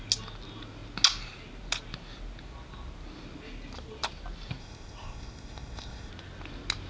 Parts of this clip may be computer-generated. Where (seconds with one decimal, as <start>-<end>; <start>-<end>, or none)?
4.6-6.1